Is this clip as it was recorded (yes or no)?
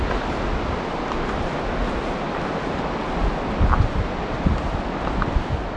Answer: yes